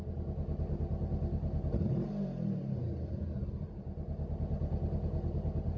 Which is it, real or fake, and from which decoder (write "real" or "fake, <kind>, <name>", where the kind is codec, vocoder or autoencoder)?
real